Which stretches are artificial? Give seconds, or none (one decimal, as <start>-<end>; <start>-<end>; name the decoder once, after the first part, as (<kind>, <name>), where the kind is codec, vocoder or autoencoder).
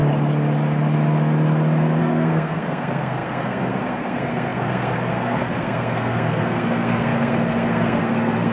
2.0-8.5 (codec, SNAC)